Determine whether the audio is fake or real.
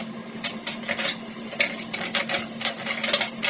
real